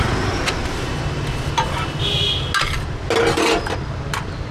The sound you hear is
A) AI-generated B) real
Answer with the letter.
B